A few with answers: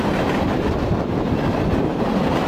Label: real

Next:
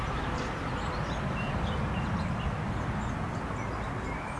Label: real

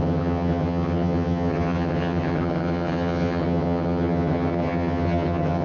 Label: fake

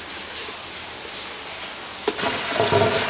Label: real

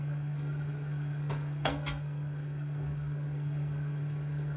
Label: fake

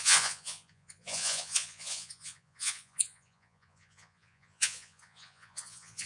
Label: fake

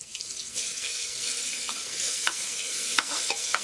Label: fake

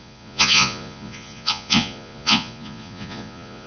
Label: fake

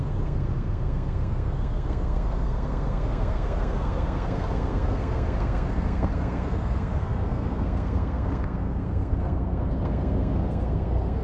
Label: fake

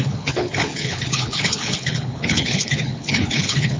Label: fake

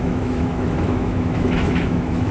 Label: fake